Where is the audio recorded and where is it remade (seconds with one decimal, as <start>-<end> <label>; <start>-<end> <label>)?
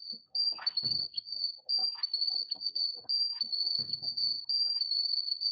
0.0-3.5 recorded; 3.5-4.4 remade; 4.4-5.5 recorded